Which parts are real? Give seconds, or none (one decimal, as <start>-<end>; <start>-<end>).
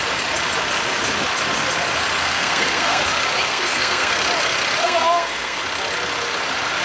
0.0-2.2; 3.0-3.5; 4.2-4.8; 5.6-6.8